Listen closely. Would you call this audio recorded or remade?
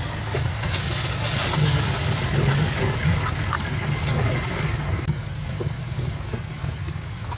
remade